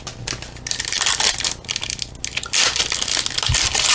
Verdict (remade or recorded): recorded